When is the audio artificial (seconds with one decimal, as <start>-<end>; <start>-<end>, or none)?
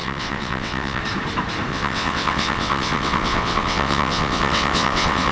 0.0-1.0; 1.7-5.3